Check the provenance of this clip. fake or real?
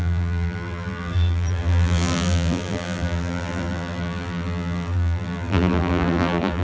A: fake